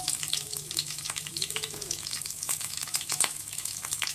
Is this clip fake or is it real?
fake